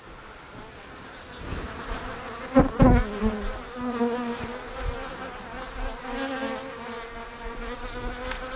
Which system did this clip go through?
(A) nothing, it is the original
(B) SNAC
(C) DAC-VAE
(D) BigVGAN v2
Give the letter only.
A